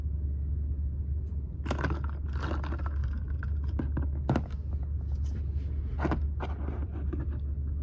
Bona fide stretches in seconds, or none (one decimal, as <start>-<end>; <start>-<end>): 0.0-3.0; 3.8-7.8